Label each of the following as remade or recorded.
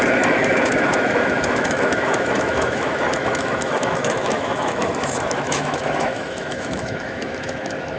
remade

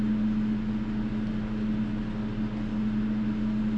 recorded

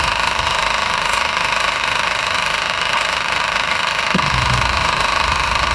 remade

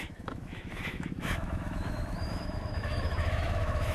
remade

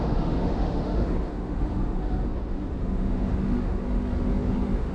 remade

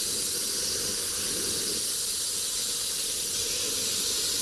recorded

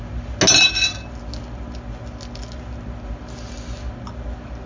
recorded